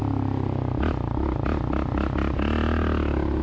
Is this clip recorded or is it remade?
recorded